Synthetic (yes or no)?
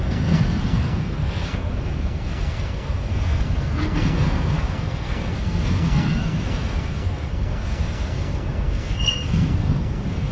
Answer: yes